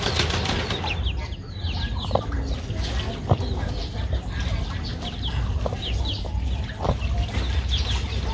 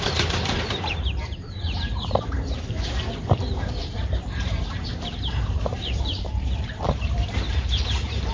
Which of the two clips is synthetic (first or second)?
second